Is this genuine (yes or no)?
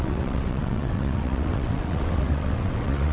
no